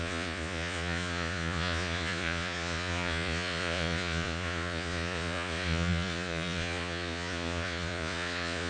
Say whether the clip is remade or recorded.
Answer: remade